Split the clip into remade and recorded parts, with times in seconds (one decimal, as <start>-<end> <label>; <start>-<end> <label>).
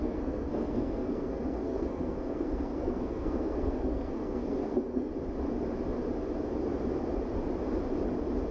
0.0-5.1 remade; 5.1-8.5 recorded